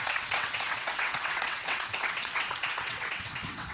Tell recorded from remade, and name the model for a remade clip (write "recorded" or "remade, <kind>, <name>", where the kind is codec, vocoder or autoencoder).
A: remade, vocoder, WaveNeXt